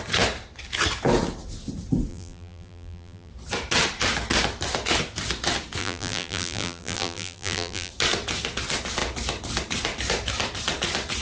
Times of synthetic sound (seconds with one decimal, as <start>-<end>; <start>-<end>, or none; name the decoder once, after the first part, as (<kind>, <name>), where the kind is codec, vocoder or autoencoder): 2.1-3.3 (vocoder, BigVGAN v2); 5.8-7.9

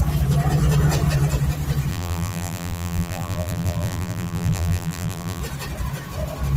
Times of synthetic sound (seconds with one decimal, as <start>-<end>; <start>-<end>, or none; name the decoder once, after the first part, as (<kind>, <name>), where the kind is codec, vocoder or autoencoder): 1.9-5.4 (vocoder, BigVGAN v2)

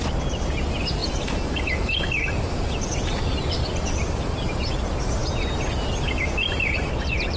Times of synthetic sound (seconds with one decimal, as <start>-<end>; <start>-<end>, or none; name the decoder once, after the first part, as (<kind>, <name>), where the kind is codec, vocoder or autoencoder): 1.0-2.2 (vocoder, BigVGAN v2); 5.2-5.9

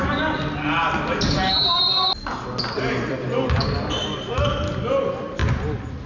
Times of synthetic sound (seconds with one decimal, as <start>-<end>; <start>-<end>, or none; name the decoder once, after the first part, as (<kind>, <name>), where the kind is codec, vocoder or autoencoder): none

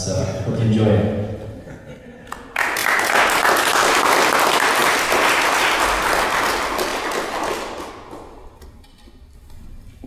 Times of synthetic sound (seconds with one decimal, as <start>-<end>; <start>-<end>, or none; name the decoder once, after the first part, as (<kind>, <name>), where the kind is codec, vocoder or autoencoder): 0.0-0.9 (vocoder, BigVGAN v2); 4.8-5.4

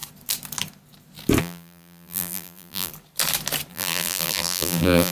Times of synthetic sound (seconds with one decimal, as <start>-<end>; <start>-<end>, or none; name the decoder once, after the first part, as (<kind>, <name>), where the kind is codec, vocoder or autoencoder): 1.4-2.9 (vocoder, BigVGAN v2); 3.7-5.1

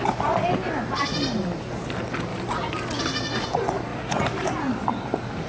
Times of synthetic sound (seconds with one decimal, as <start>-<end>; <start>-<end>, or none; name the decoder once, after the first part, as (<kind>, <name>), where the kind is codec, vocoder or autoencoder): none

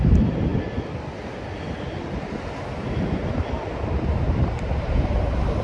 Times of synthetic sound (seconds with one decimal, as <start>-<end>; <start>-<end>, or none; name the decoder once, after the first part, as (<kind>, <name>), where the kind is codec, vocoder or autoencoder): 0.0-0.5 (vocoder, BigVGAN v2); 3.9-5.6